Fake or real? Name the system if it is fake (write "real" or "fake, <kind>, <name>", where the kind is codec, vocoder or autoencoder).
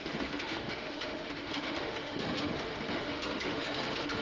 fake, autoencoder, DAC-VAE